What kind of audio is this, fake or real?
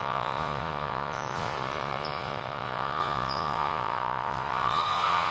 fake